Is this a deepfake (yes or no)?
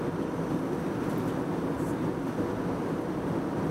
no